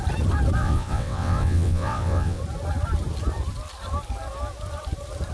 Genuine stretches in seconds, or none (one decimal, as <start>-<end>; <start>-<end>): 0.0-0.6; 2.4-5.3